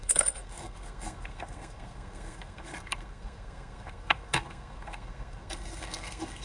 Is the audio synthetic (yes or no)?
yes